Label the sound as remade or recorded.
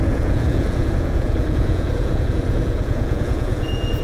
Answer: remade